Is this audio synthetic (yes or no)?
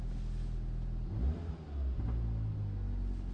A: no